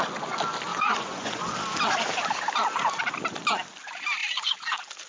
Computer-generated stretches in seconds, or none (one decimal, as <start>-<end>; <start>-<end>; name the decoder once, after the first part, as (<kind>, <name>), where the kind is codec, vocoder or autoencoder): 0.7-1.5 (vocoder, Vocos)